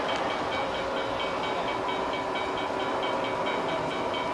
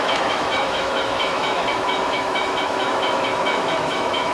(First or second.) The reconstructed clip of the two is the second